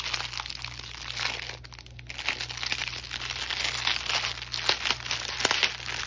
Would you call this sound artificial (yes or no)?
no